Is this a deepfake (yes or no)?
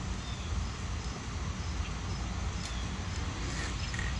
no